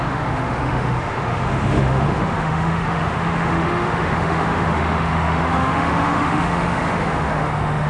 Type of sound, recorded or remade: remade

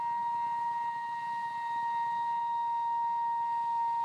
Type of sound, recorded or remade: recorded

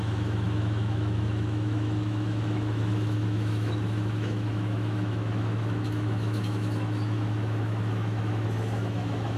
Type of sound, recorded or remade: remade